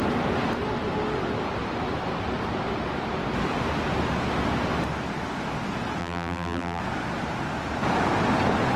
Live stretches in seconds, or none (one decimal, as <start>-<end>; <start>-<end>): 0.0-6.0; 6.8-8.8